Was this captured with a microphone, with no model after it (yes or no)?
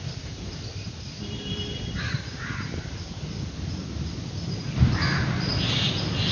yes